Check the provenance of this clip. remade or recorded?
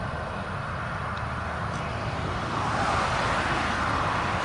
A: recorded